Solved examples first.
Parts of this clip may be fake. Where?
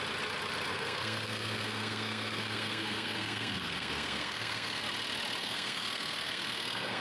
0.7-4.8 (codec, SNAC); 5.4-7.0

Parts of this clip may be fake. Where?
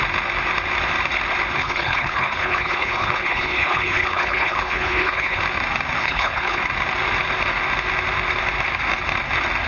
1.6-5.4 (codec, HILCodec); 6.0-6.6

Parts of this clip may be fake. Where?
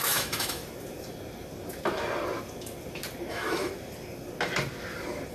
0.0-0.6 (autoencoder, DAC-VAE); 3.3-3.7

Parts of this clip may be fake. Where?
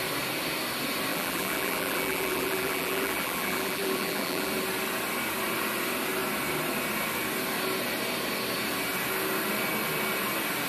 1.1-4.5 (vocoder, BigVGAN v2)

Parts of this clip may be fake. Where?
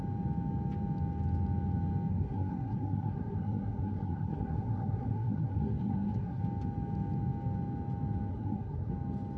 2.1-6.4 (codec, SNAC); 8.3-8.9